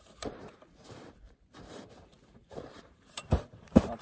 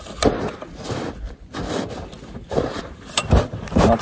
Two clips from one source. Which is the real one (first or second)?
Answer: second